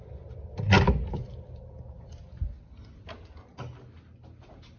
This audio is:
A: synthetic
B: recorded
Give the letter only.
B